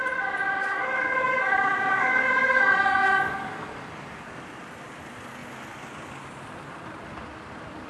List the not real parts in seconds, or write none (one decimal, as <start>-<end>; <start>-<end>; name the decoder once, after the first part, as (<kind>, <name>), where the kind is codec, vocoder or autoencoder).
0.6-4.3 (codec, DAC)